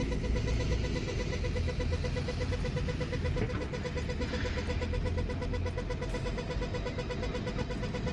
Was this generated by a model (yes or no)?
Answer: no